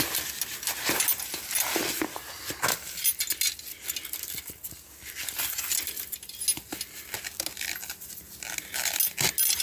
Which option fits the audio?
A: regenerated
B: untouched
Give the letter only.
B